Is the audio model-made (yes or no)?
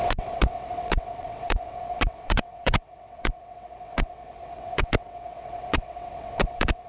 yes